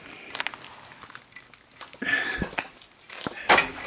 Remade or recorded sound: recorded